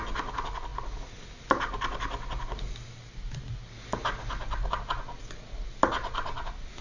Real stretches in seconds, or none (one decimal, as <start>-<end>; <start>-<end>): 0.0-6.8